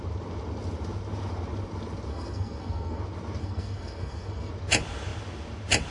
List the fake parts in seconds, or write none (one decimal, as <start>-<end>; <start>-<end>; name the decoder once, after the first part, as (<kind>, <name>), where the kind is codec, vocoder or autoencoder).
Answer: 2.1-3.0 (codec, SNAC); 3.4-4.5